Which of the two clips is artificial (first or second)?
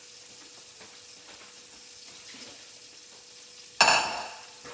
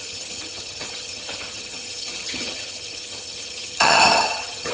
second